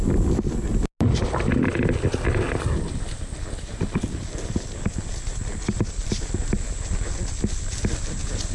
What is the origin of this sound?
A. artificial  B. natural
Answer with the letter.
B